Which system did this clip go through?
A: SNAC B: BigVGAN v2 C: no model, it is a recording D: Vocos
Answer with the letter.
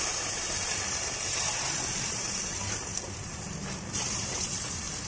B